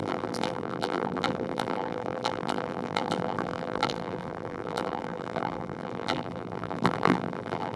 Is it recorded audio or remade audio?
remade